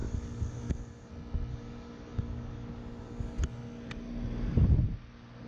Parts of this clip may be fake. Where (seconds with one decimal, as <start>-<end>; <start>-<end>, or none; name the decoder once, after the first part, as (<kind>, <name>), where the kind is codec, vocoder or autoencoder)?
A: 0.0-1.1 (codec, DAC); 1.5-3.4